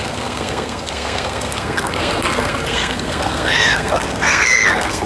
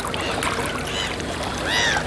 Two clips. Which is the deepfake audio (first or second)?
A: first